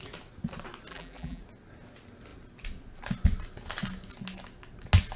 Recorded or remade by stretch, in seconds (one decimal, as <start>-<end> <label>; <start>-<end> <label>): 0.0-0.9 recorded; 0.9-1.4 remade; 1.4-5.2 recorded